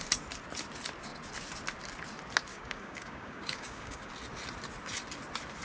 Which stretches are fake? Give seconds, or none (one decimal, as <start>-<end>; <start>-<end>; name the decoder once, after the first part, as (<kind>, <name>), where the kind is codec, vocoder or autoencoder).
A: 2.5-4.1 (codec, DAC)